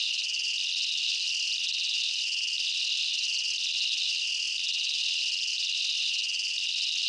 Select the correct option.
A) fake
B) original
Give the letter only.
B